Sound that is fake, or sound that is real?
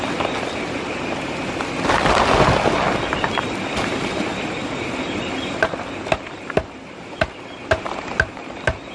real